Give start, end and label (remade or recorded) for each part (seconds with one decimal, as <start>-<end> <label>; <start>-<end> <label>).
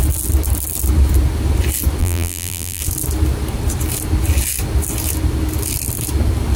0.0-2.0 recorded; 2.0-2.8 remade; 2.8-6.6 recorded